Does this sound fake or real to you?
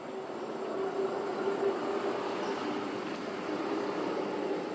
real